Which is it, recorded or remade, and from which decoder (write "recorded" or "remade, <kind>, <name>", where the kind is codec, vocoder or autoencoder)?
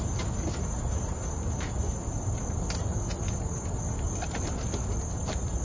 recorded